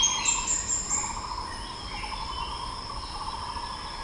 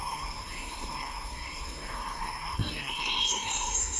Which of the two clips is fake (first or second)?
second